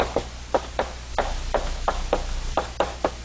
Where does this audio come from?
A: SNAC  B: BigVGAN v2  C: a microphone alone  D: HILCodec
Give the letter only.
C